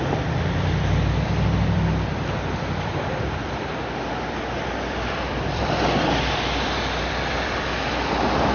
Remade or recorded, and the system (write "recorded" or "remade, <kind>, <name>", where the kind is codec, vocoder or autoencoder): remade, vocoder, BigVGAN v2